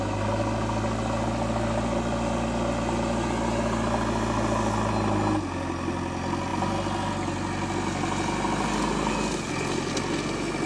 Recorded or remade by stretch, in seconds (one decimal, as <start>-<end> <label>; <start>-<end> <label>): 0.0-10.7 recorded